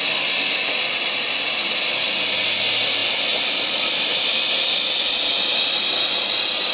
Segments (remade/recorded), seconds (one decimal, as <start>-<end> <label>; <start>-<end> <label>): 0.0-6.7 recorded